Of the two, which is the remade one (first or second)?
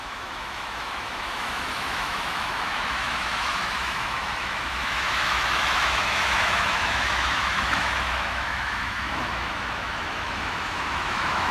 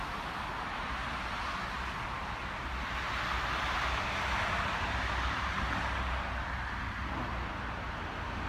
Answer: first